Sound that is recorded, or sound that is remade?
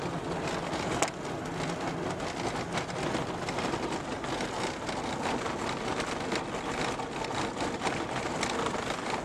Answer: recorded